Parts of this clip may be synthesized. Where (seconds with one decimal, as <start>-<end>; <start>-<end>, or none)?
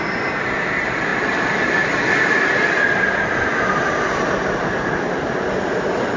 none